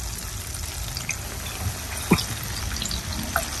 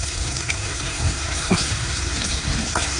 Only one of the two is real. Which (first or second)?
first